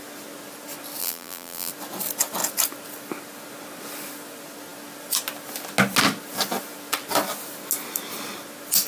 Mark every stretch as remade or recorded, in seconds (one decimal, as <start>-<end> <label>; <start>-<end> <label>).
0.0-1.0 recorded; 1.0-1.7 remade; 1.7-8.9 recorded